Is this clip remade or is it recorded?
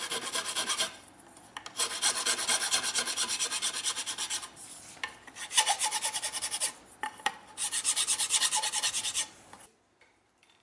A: remade